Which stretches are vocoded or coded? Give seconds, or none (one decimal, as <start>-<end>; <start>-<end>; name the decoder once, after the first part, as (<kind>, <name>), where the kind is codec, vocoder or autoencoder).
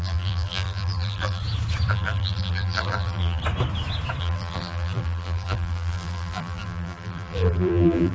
0.0-1.4 (vocoder, BigVGAN v2); 1.9-3.4; 4.2-8.1